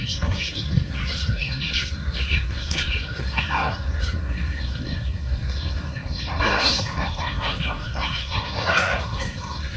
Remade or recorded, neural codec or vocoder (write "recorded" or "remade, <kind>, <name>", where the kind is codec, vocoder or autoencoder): remade, codec, SNAC